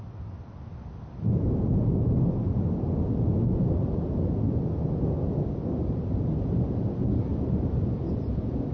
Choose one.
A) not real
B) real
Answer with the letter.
B